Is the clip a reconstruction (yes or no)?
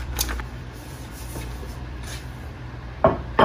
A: yes